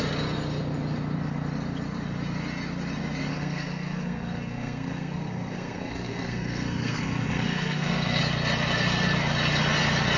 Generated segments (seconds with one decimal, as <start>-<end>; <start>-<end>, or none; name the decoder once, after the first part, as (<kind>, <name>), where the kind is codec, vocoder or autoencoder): 3.3-8.2 (codec, SNAC)